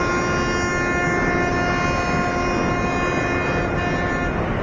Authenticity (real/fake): real